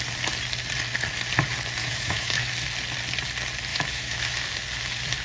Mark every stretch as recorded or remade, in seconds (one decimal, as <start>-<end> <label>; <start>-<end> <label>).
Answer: 0.0-1.8 recorded; 1.8-2.5 remade; 2.5-3.7 recorded; 3.7-4.3 remade; 4.3-5.2 recorded